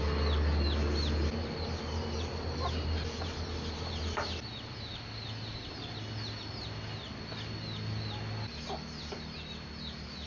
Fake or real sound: real